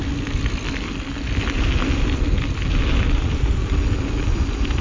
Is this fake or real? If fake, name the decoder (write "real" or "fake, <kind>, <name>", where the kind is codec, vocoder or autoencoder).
real